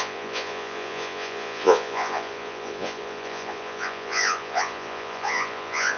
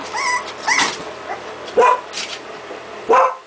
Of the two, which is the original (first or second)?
second